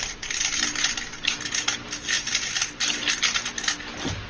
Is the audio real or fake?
real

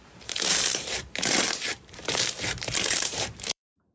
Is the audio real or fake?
fake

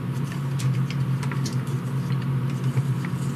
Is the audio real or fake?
real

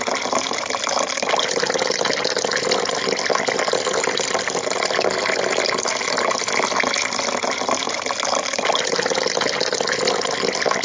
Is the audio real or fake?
real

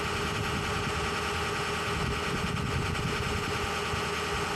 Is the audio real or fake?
real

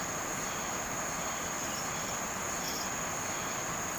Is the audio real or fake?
real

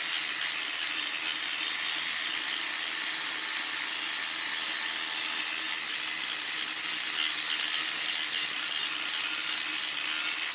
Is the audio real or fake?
real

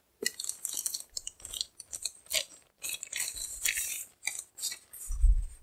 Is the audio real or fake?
real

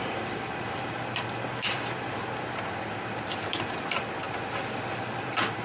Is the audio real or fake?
fake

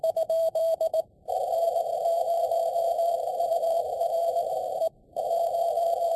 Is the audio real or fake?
fake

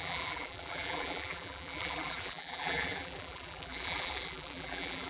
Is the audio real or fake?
fake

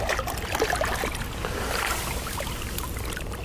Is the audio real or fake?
fake